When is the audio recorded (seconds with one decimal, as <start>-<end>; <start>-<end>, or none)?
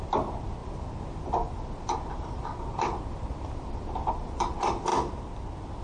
4.9-5.8